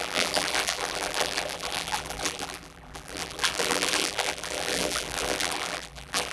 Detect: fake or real fake